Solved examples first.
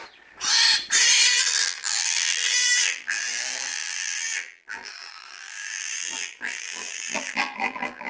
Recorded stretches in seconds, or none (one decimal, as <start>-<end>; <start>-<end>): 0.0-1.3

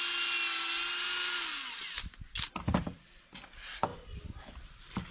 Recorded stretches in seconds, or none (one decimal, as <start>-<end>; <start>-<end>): 0.0-5.1

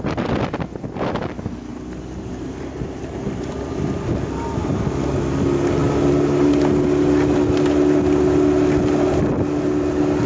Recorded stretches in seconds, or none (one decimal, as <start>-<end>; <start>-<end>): 0.0-1.7; 3.7-10.3